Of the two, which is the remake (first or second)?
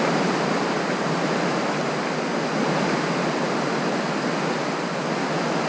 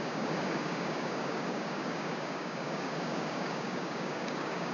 second